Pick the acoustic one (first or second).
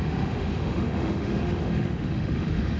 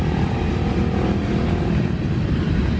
second